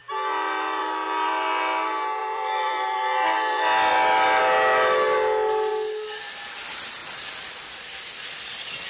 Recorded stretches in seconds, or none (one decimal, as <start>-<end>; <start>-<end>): 0.0-2.2; 4.4-7.0; 7.7-8.9